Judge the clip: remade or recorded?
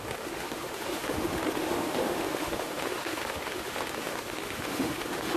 remade